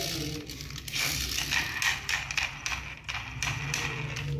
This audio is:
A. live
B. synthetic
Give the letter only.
A